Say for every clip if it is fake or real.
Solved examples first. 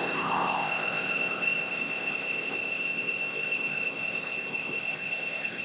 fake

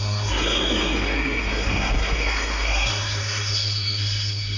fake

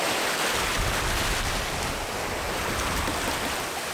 real